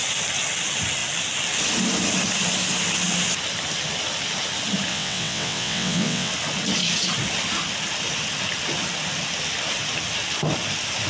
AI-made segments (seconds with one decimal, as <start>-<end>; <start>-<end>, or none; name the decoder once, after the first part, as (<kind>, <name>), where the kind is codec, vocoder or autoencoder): 4.9-6.3 (vocoder, WaveNeXt)